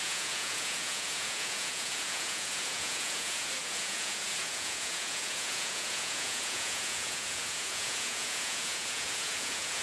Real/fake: fake